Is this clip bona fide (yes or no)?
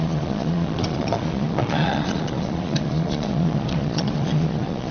no